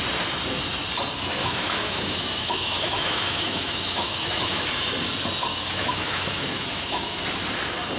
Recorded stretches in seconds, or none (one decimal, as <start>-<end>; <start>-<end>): 0.0-1.4; 4.7-5.5; 7.2-8.0